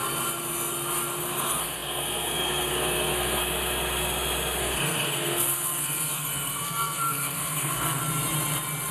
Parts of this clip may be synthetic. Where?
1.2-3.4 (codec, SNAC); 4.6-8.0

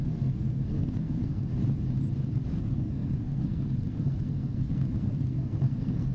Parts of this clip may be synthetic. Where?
0.0-1.5 (codec, SNAC); 2.6-6.1

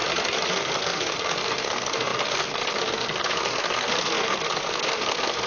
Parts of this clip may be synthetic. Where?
0.5-5.5 (codec, SNAC)

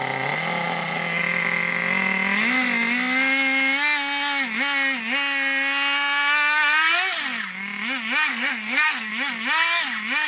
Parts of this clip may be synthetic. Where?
8.3-9.1 (codec, SNAC)